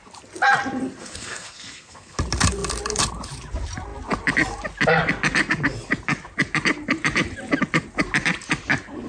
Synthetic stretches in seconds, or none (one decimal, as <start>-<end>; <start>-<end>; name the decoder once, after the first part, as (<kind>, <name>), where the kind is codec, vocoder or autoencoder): 1.0-2.2 (codec, SNAC)